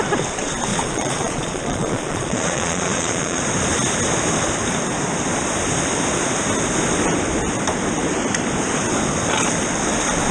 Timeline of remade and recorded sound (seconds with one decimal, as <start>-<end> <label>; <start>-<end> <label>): 0.0-0.7 recorded; 0.7-3.4 remade; 3.4-10.3 recorded